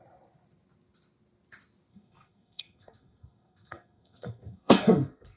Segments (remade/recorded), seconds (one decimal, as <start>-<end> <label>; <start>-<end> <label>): 0.0-1.9 recorded; 1.9-5.4 remade